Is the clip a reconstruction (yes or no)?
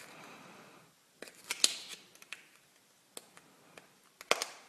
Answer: no